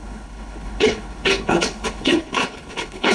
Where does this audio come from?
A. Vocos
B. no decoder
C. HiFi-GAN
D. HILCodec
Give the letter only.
D